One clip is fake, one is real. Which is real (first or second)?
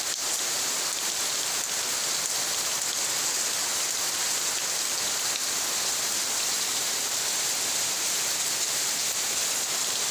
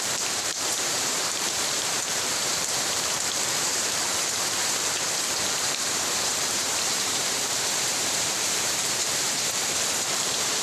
first